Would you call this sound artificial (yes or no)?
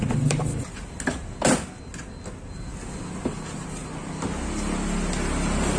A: no